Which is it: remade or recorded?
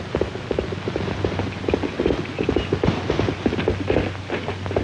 recorded